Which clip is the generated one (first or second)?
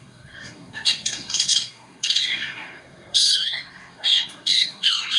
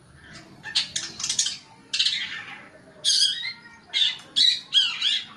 first